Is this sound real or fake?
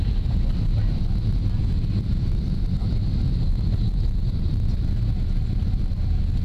real